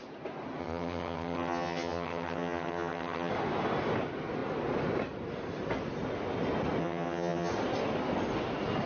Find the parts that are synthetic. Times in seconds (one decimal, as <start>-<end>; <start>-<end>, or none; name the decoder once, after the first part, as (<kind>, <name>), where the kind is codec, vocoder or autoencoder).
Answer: 0.6-3.3 (vocoder, HiFi-GAN); 6.8-7.5